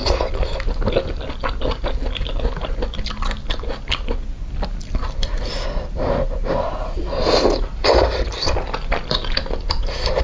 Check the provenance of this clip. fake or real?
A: real